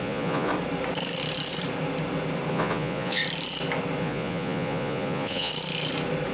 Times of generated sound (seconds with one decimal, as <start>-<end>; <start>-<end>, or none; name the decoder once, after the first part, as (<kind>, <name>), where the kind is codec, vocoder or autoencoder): 0.0-0.5 (vocoder, Vocos); 2.5-3.2; 4.0-5.5